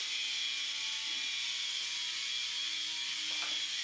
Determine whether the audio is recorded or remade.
recorded